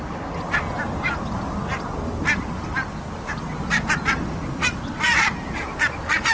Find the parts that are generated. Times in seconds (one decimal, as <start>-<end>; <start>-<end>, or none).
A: 2.7-4.8